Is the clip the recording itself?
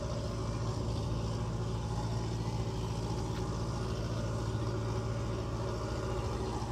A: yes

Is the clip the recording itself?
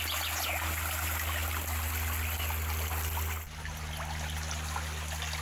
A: yes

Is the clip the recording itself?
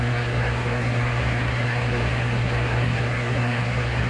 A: no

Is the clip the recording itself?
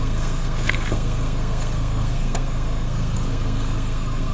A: no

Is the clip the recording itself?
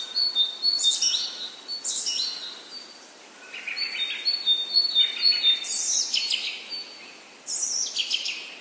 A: yes